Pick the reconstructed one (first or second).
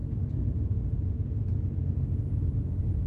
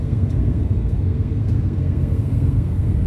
second